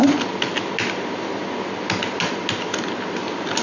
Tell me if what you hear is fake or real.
real